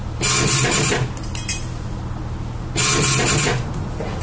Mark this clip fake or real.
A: real